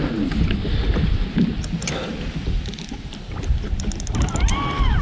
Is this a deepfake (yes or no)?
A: no